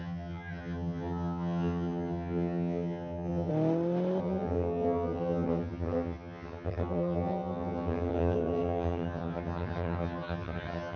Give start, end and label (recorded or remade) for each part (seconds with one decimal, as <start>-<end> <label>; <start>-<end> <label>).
0.0-3.5 remade; 3.5-4.2 recorded; 4.2-11.0 remade